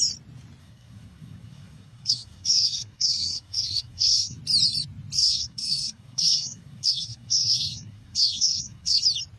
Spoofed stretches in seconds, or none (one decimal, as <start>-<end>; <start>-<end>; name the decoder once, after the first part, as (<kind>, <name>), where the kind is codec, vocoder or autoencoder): 0.6-4.4 (codec, SNAC); 5.2-9.0